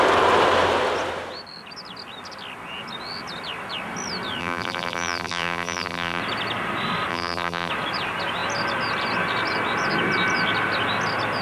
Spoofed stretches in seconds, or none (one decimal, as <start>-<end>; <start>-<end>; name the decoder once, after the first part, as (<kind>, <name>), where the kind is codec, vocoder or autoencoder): 4.4-6.2 (vocoder, BigVGAN v2); 7.1-7.7